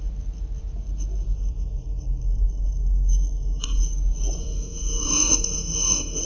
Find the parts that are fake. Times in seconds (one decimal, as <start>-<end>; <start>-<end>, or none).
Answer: 4.4-6.2